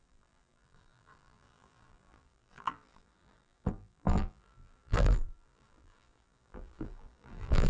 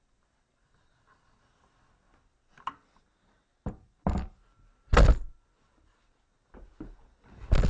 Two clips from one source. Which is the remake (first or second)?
first